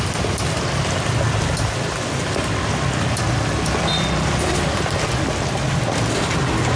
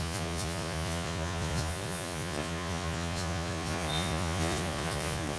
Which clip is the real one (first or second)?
first